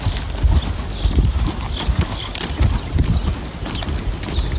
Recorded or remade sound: recorded